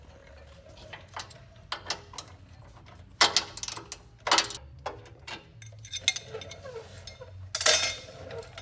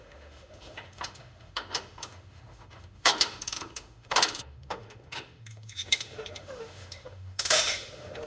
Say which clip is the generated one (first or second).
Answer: second